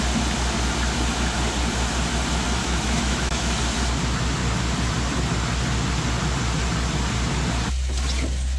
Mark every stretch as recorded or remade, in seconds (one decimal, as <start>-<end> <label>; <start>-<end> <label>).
0.0-2.6 recorded; 2.6-3.6 remade; 3.6-8.6 recorded